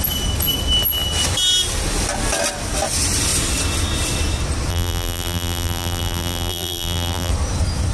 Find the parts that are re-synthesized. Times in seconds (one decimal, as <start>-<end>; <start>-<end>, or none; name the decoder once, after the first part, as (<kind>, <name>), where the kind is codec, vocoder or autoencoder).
4.7-7.3 (vocoder, BigVGAN v2)